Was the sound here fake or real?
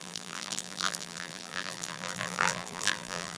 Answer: fake